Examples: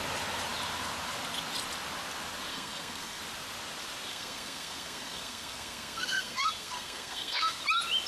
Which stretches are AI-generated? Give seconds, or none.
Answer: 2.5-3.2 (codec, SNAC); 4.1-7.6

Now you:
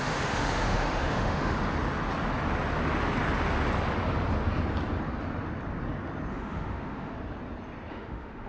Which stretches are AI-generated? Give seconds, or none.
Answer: 0.0-1.6 (autoencoder, DAC-VAE); 6.3-7.1; 7.9-8.5

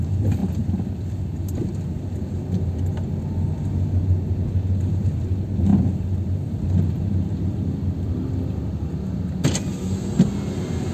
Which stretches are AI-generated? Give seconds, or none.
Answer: none

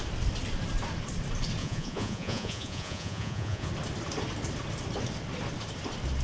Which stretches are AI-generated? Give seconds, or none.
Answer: 1.6-3.7 (vocoder, Vocos)

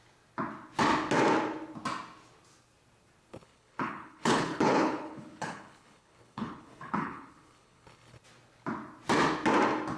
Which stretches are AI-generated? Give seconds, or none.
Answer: 3.3-8.2 (codec, HILCodec)

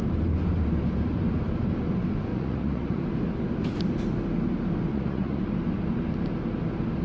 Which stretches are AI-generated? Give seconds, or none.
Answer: 2.3-3.0 (vocoder, Vocos); 4.9-5.4